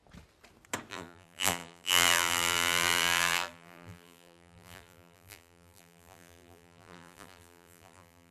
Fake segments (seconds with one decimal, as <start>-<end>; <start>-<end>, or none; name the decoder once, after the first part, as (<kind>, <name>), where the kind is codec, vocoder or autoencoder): 0.9-8.3 (vocoder, BigVGAN v2)